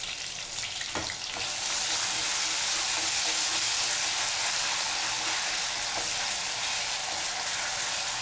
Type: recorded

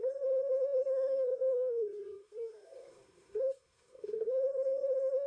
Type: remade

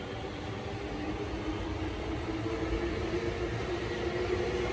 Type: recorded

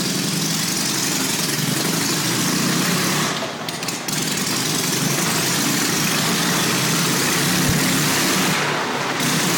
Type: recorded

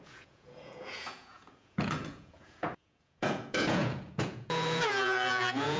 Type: remade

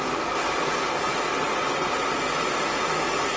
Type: recorded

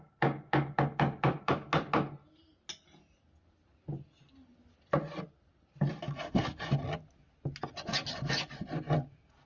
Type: recorded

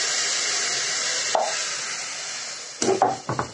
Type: recorded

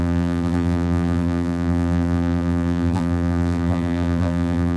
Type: remade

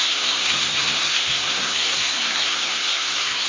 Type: remade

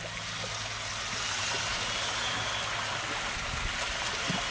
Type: recorded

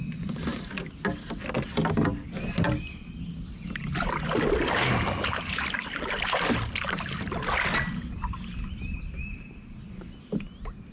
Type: recorded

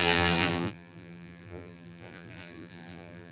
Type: remade